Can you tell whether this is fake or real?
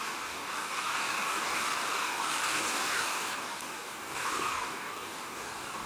fake